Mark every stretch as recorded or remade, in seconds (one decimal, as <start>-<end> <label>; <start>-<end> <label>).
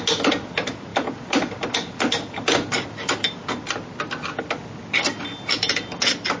0.0-6.4 recorded